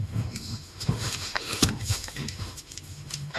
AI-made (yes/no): yes